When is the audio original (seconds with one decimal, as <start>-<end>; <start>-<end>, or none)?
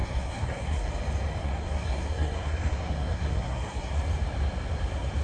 0.9-1.4; 3.9-5.2